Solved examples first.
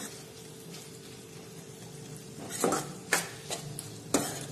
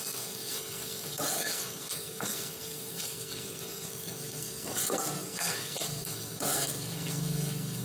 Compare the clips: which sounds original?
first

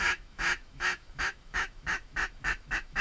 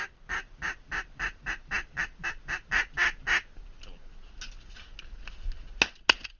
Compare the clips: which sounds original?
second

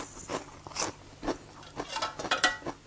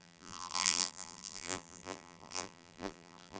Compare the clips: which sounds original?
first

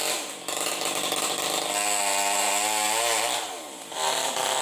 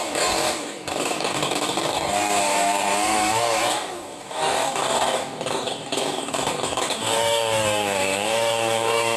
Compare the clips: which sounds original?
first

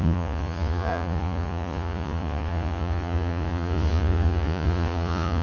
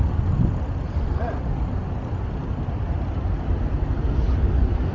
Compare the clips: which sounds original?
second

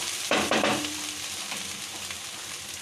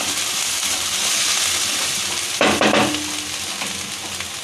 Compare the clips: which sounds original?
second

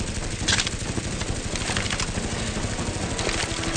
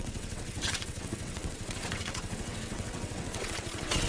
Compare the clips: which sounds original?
first